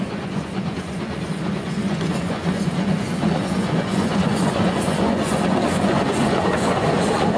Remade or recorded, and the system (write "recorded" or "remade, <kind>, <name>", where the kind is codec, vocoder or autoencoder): remade, vocoder, Vocos